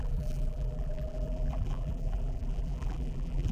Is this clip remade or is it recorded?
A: remade